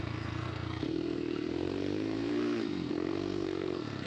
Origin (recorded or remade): remade